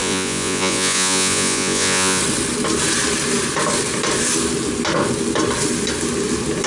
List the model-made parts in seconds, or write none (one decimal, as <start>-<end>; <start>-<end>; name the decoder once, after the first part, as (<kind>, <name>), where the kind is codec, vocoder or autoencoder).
0.0-2.2 (vocoder, Vocos)